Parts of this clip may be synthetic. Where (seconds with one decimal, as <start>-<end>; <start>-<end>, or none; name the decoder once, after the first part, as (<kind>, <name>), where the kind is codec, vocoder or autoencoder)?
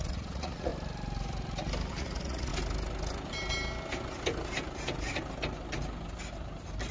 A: 0.0-0.7 (vocoder, Vocos); 1.9-2.5